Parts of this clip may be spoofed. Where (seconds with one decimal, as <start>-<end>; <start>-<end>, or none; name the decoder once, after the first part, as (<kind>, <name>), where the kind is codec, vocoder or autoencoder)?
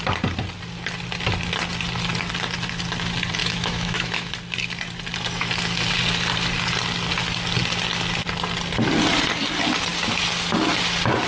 3.4-4.3 (autoencoder, DAC-VAE)